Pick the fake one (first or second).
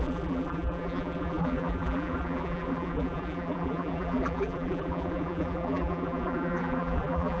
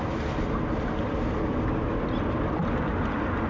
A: first